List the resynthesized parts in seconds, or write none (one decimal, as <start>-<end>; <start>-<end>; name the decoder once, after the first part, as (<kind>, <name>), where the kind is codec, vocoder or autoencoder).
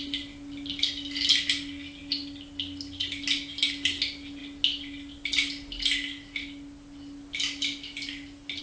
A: none